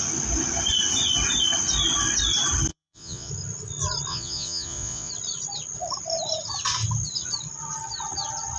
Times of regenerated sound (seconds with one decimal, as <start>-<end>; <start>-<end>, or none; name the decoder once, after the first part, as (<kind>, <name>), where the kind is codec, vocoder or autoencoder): 2.7-3.3 (vocoder, Vocos); 4.1-5.1